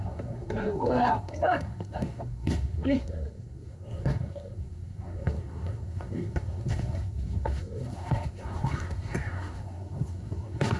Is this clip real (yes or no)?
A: no